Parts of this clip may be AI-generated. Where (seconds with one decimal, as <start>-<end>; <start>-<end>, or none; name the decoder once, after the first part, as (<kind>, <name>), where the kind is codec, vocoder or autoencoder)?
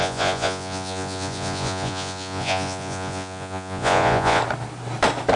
0.0-4.4 (vocoder, Vocos)